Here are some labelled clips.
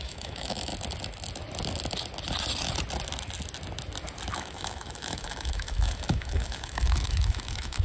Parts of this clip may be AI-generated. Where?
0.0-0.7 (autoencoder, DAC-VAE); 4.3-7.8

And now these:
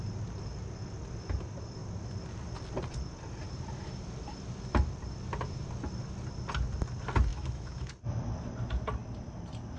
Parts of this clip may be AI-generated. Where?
7.3-7.9 (autoencoder, DAC-VAE)

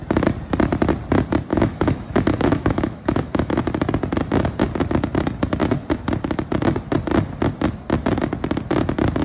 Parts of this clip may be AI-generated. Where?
1.5-3.6 (autoencoder, DAC-VAE)

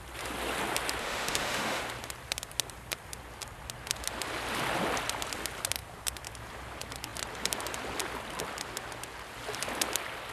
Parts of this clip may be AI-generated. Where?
1.0-1.8 (autoencoder, DAC-VAE)

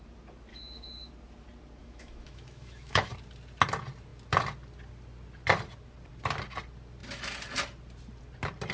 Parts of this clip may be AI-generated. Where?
0.5-1.1 (autoencoder, DAC-VAE); 1.8-3.1

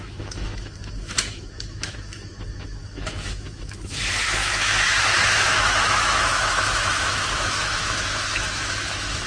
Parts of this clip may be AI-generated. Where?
0.0-9.3 (autoencoder, DAC-VAE)

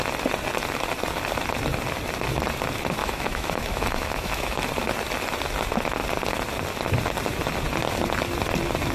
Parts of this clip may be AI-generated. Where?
3.0-4.6 (autoencoder, DAC-VAE)